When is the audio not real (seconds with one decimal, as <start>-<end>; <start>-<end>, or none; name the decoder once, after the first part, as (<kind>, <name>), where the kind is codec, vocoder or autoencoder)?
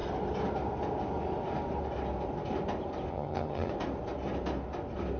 3.1-3.7 (vocoder, HiFi-GAN)